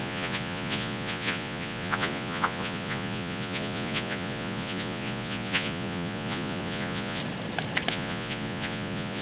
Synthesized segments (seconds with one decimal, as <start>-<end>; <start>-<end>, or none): 0.0-7.2; 7.9-9.2